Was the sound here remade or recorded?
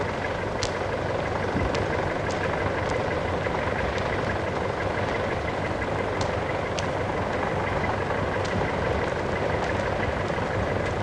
recorded